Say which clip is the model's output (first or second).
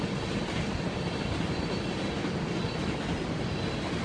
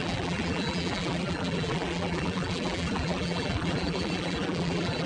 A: second